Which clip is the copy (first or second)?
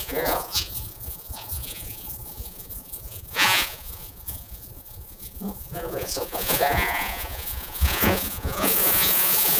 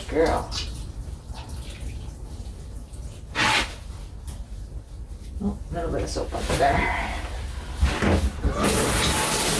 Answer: first